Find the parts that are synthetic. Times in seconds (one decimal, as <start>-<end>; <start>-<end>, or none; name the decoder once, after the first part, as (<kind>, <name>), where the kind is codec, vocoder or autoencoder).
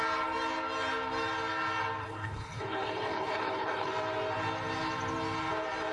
2.0-3.9 (codec, HILCodec)